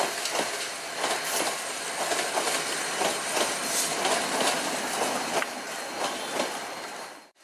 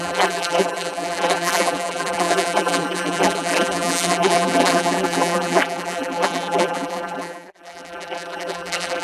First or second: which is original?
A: first